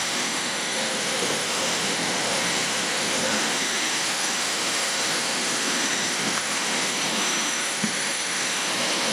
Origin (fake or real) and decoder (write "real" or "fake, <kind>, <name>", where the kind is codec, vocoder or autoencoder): fake, autoencoder, DAC-VAE